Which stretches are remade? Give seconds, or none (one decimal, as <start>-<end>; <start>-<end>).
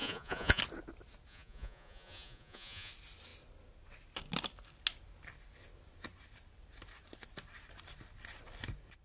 0.0-0.6; 1.3-2.9